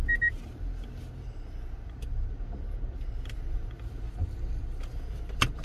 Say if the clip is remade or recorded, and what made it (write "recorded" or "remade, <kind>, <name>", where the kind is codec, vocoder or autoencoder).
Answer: recorded